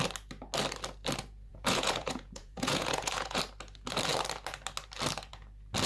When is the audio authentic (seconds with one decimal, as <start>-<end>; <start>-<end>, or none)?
0.0-1.5; 3.4-5.9